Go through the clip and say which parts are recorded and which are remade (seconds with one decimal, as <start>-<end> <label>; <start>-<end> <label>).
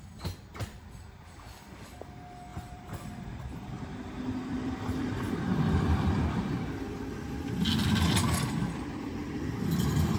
0.0-2.5 recorded; 2.5-5.3 remade; 5.3-10.2 recorded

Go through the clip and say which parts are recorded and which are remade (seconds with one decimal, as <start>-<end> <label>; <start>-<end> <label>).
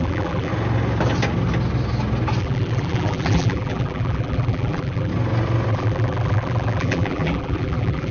0.0-0.5 remade; 0.5-2.4 recorded; 2.4-5.1 remade; 5.1-5.7 recorded; 5.7-8.1 remade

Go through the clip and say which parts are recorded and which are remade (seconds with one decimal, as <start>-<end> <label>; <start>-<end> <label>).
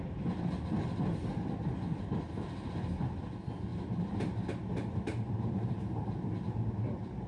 0.0-3.7 recorded; 3.7-6.1 remade; 6.1-7.3 recorded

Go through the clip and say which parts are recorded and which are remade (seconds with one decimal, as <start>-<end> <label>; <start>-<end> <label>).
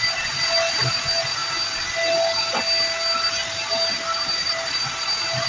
0.0-5.5 recorded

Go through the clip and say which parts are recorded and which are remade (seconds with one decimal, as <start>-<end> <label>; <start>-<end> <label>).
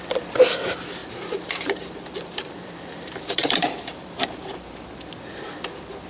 0.0-1.0 recorded; 1.0-4.7 remade; 4.7-6.1 recorded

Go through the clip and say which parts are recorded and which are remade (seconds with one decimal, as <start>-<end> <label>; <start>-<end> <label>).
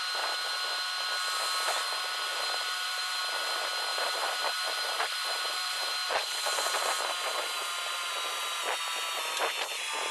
0.0-2.3 recorded; 2.3-3.2 remade; 3.2-3.9 recorded; 3.9-8.2 remade; 8.2-10.1 recorded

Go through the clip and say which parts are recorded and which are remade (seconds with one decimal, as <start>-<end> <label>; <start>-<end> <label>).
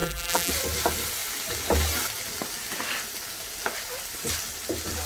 0.0-0.5 remade; 0.5-5.1 recorded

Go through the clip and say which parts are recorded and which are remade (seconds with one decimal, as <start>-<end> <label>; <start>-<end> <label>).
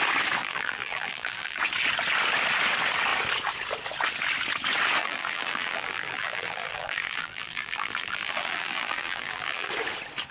0.0-0.4 recorded; 0.4-1.6 remade; 1.6-5.0 recorded; 5.0-9.7 remade; 9.7-10.3 recorded